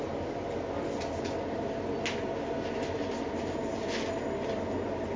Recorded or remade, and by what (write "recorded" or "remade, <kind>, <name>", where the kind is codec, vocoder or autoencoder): recorded